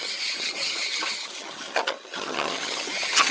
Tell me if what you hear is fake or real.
fake